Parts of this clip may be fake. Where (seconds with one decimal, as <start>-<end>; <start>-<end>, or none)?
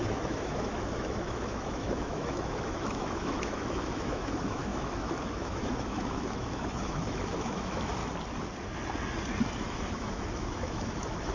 0.0-8.0; 9.6-11.3